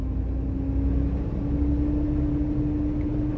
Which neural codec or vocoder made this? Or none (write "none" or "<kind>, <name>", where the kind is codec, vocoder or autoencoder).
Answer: none